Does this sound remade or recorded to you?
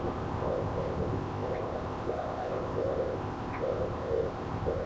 remade